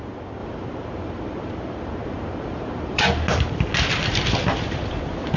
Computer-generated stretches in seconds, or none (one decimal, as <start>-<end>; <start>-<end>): 0.4-3.0